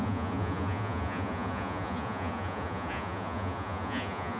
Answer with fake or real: fake